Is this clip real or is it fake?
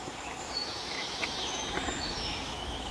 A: fake